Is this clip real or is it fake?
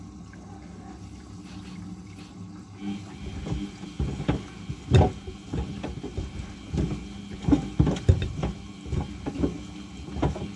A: real